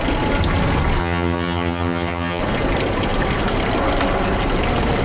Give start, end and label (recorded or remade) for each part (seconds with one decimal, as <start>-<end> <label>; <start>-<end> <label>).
0.0-1.0 recorded; 1.0-2.4 remade; 2.4-5.0 recorded

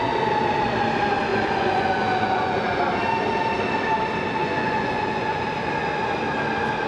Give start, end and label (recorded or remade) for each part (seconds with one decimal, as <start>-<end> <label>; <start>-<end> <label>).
0.0-1.3 recorded; 1.3-2.8 remade; 2.8-4.4 recorded; 4.4-5.4 remade; 5.4-6.9 recorded